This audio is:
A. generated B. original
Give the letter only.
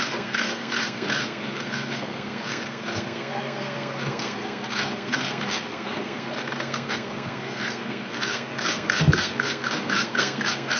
A